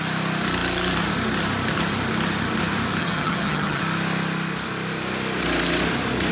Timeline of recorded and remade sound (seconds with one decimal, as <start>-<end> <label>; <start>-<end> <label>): 0.0-3.0 recorded; 3.0-3.8 remade; 3.8-6.3 recorded